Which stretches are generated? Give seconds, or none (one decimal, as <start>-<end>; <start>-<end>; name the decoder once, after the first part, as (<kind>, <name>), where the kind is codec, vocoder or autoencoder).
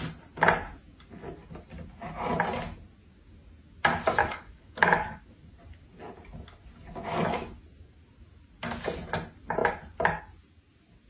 4.2-5.2 (codec, DAC)